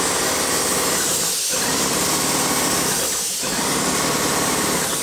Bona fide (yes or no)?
no